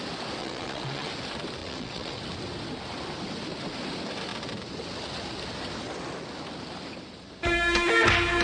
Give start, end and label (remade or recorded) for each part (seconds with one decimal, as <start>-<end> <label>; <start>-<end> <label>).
0.0-0.4 recorded; 0.4-1.1 remade; 1.1-1.6 recorded; 1.6-2.2 remade; 2.2-8.4 recorded